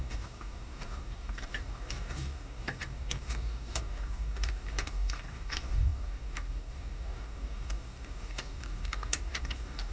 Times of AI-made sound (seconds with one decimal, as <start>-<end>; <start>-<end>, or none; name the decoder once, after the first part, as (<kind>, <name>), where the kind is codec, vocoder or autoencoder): 0.0-9.9 (codec, DAC)